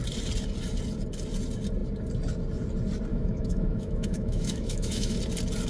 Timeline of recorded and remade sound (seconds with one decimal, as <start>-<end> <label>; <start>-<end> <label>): 0.0-3.1 recorded; 3.1-5.2 remade; 5.2-5.7 recorded